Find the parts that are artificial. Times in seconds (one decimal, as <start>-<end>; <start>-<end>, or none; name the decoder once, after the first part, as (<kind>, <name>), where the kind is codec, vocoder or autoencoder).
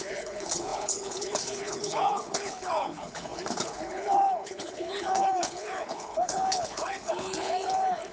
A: 0.0-8.1 (codec, HILCodec)